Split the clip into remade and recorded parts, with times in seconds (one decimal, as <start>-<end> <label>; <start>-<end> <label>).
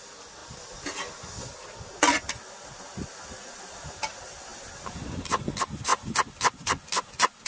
0.0-7.5 recorded